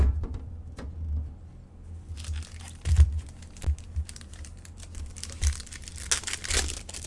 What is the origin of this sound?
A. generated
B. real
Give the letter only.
B